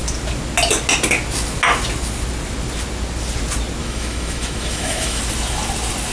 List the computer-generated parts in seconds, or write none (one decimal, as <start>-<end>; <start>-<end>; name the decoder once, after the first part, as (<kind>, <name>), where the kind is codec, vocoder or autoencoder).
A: 3.8-5.2 (autoencoder, DAC-VAE)

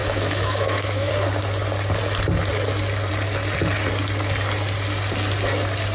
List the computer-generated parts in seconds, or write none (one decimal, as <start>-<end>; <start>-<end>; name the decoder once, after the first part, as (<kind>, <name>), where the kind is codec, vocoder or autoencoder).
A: 0.0-1.1 (autoencoder, DAC-VAE)

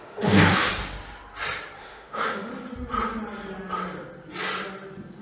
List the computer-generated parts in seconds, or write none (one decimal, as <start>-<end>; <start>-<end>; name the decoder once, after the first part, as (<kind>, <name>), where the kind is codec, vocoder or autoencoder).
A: 0.0-0.7 (autoencoder, DAC-VAE); 1.8-2.5

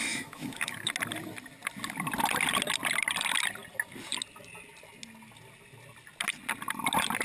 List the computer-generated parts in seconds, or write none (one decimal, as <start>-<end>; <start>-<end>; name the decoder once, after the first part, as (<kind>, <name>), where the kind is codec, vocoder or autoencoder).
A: 0.0-0.9 (autoencoder, DAC-VAE)

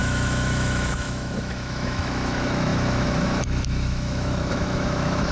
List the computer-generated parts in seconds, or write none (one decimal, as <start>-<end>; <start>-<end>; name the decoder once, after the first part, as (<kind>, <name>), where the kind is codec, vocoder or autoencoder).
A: 0.0-5.3 (autoencoder, DAC-VAE)

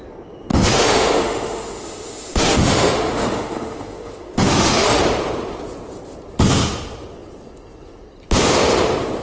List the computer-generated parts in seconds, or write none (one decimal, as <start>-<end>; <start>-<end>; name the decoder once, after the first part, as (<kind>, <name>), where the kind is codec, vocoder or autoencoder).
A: 0.5-5.0 (autoencoder, DAC-VAE)

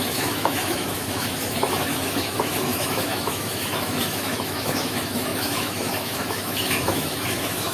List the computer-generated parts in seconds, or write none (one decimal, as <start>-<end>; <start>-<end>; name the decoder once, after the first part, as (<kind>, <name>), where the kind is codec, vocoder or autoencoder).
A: 0.0-7.7 (autoencoder, DAC-VAE)